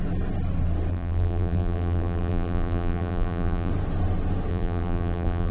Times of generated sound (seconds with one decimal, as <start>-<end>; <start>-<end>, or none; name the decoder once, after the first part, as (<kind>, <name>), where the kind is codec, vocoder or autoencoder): 0.9-3.7 (vocoder, BigVGAN v2); 4.5-5.5